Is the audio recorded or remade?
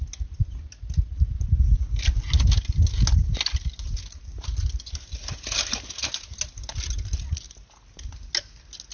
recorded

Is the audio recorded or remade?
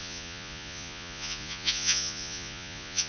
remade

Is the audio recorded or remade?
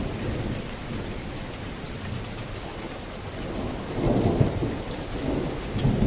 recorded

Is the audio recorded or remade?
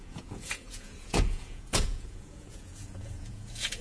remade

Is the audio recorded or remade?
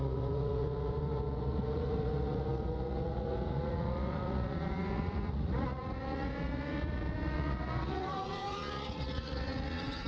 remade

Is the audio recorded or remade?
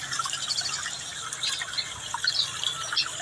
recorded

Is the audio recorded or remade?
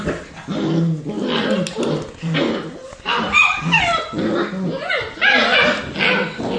recorded